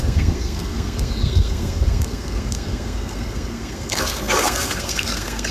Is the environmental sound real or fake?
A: fake